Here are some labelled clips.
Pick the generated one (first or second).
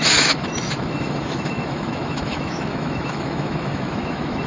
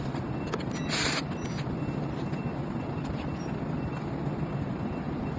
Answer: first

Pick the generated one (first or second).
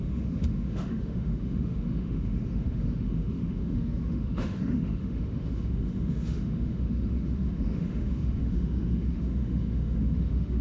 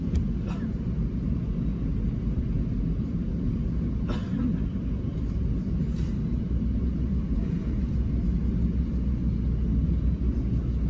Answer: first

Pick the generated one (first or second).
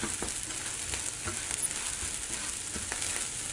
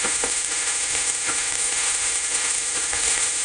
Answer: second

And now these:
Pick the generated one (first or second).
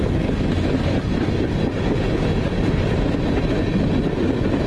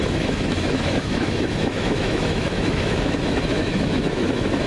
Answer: second